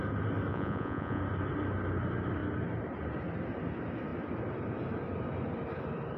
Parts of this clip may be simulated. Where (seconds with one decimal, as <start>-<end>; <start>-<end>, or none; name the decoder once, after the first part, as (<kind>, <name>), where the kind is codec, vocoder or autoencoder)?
0.5-1.2 (vocoder, Vocos)